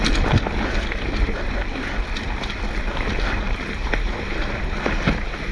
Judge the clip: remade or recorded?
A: remade